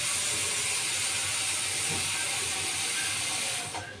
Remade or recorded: recorded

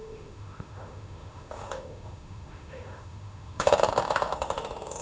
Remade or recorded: remade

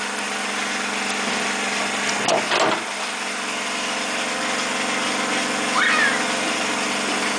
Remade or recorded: recorded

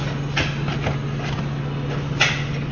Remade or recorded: recorded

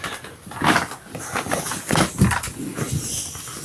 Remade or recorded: remade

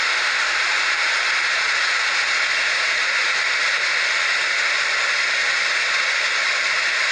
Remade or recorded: recorded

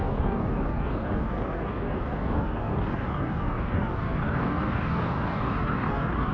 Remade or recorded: remade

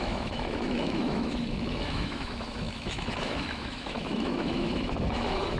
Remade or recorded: remade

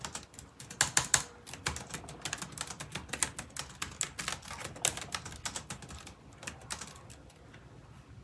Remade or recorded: recorded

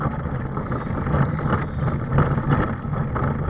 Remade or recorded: recorded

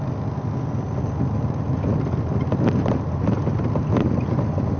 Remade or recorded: recorded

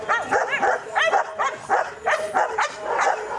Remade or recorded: recorded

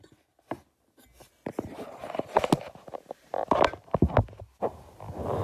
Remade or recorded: recorded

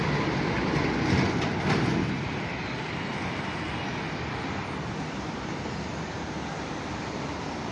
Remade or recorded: recorded